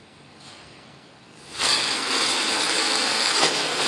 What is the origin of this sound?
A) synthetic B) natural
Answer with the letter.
A